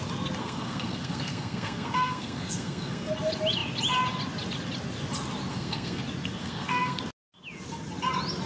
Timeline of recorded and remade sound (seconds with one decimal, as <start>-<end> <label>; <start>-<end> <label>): 0.0-0.4 recorded; 0.4-3.1 remade; 3.1-5.5 recorded; 5.5-6.0 remade; 6.0-6.4 recorded; 6.4-7.0 remade; 7.0-8.5 recorded